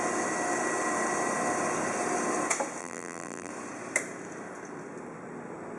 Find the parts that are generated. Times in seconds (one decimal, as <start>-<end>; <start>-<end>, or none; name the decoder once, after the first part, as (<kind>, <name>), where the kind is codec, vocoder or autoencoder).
2.8-3.5 (vocoder, BigVGAN v2)